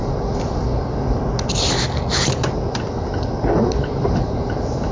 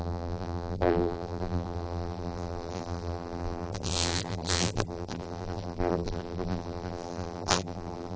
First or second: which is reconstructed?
second